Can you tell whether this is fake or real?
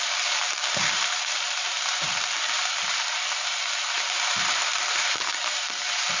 fake